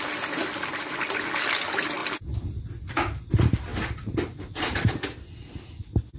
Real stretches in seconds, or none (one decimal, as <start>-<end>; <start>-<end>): 0.0-3.7; 5.3-6.2